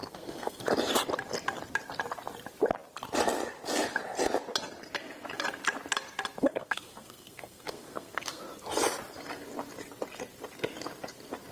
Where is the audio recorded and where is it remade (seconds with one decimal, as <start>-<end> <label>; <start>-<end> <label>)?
0.0-0.6 remade; 0.6-6.4 recorded; 6.4-8.4 remade; 8.4-11.5 recorded